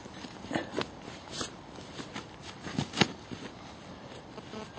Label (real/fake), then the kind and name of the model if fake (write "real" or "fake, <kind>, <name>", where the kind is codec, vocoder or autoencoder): real